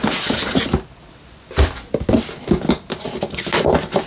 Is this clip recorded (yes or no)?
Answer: yes